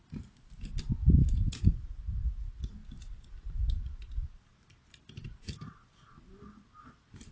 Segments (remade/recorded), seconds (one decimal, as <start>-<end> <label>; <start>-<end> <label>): 0.0-7.3 recorded

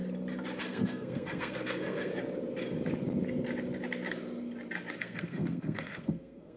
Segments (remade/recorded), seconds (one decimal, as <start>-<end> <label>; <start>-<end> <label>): 0.0-0.6 recorded; 0.6-2.1 remade; 2.1-5.0 recorded; 5.0-6.6 remade

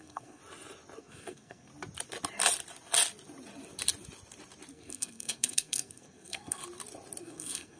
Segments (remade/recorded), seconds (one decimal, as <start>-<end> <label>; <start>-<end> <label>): 0.0-0.4 remade; 0.4-1.0 recorded; 1.0-1.7 remade; 1.7-4.7 recorded; 4.7-6.6 remade; 6.6-7.2 recorded; 7.2-7.8 remade

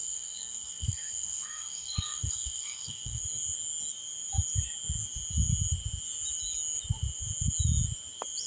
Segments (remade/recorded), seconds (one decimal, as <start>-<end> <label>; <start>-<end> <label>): 0.0-3.2 remade; 3.2-8.5 recorded